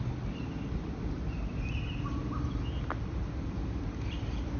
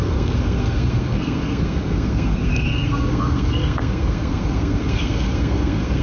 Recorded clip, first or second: first